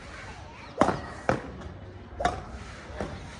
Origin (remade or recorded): recorded